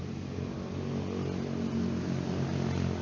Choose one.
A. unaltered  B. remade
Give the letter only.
A